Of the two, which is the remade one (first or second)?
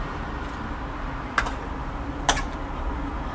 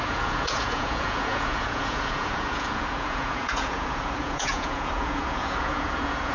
second